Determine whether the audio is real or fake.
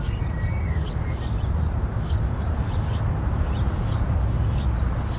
real